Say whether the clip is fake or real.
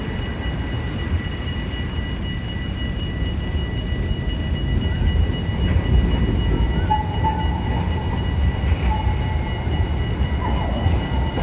real